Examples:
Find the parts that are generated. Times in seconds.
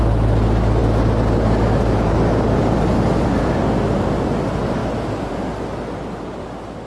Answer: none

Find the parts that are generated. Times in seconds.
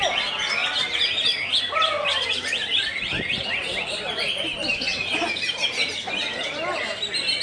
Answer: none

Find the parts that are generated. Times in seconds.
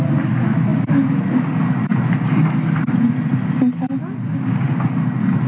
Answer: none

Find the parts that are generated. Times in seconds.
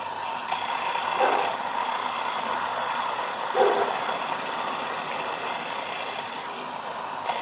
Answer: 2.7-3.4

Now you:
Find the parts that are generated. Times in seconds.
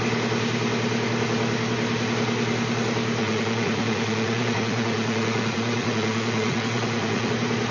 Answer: 3.2-7.3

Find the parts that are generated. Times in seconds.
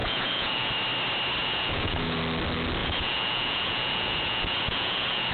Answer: 0.0-0.7; 1.4-2.2; 2.8-5.3